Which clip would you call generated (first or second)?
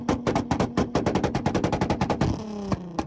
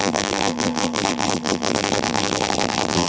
second